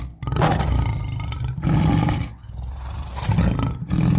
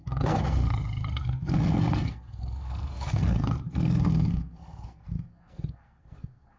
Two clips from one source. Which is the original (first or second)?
first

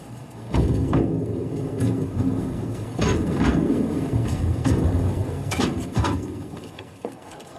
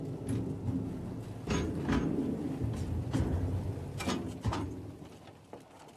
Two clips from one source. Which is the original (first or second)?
second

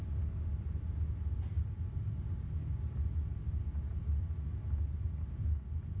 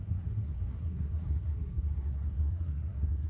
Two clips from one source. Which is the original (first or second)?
first